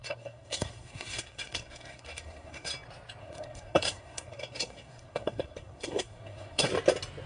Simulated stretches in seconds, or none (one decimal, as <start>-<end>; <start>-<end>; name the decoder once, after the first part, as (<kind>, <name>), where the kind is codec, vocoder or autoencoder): 0.0-2.7 (codec, SNAC); 3.2-6.7